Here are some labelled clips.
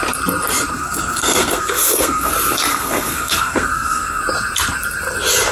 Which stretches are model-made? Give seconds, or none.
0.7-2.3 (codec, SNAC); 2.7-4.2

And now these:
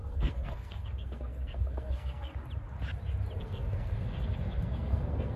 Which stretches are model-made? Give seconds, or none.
0.0-2.3 (codec, SNAC); 3.4-5.4

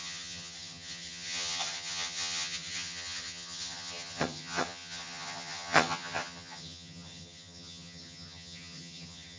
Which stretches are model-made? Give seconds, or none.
0.0-9.4 (vocoder, HiFi-GAN)

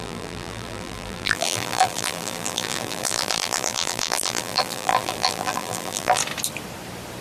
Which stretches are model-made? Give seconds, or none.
0.0-6.2 (vocoder, BigVGAN v2)